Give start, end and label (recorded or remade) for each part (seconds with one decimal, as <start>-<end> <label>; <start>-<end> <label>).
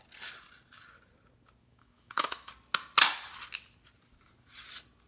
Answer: 0.0-1.6 recorded; 1.6-2.5 remade; 2.5-5.1 recorded